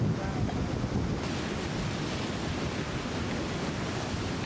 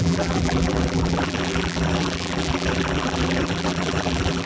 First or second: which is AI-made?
second